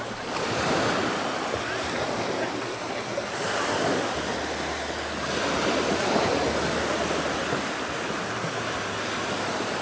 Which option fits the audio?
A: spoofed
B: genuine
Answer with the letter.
B